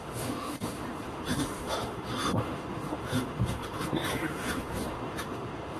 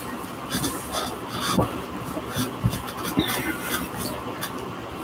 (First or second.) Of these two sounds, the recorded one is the second